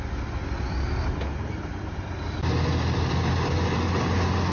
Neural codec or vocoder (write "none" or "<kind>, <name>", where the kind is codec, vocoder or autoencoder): none